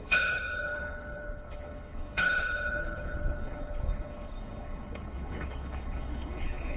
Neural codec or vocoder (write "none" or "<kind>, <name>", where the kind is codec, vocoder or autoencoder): codec, HILCodec